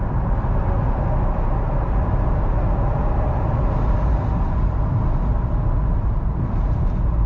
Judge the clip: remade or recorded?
recorded